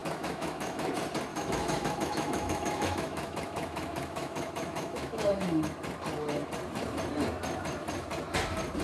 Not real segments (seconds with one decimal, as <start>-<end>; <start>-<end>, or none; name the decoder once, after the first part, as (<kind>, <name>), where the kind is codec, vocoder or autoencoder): 0.0-0.9 (autoencoder, DAC-VAE); 1.3-5.7